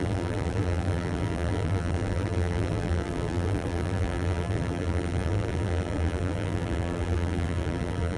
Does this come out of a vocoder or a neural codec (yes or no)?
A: yes